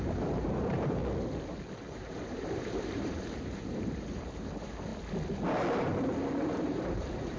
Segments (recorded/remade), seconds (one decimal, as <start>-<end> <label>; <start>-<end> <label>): 0.0-1.0 remade; 1.0-1.9 recorded; 1.9-4.9 remade; 4.9-5.8 recorded; 5.8-7.4 remade